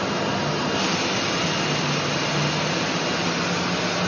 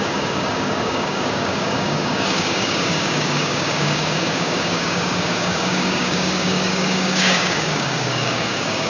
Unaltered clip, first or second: first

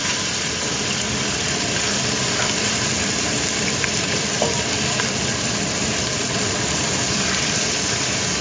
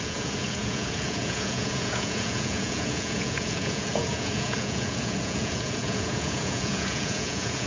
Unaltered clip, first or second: first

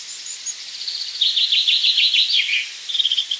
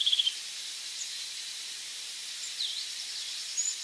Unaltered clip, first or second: first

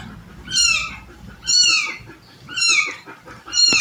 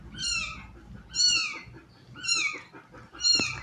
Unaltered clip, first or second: second